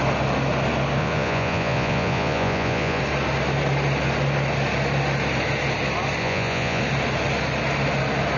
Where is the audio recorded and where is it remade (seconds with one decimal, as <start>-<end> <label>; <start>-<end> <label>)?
0.0-1.0 recorded; 1.0-3.0 remade; 3.0-6.2 recorded; 6.2-6.8 remade; 6.8-8.4 recorded